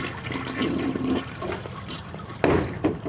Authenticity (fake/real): real